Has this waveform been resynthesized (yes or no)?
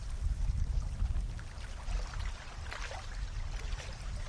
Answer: no